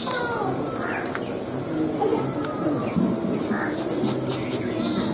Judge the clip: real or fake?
real